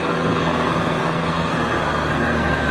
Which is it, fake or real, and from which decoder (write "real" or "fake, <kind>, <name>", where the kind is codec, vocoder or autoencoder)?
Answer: fake, codec, SNAC